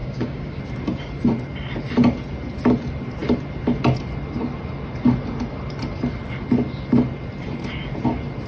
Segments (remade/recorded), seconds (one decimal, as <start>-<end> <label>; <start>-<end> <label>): 0.0-0.6 remade; 0.6-8.5 recorded